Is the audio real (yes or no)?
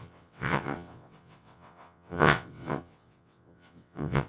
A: no